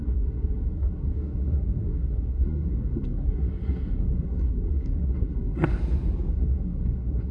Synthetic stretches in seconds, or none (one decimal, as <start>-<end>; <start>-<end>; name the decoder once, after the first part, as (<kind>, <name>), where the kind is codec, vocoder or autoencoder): 0.0-5.7 (codec, SNAC); 6.3-7.3